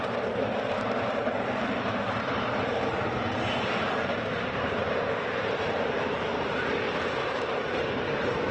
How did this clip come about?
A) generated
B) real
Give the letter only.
A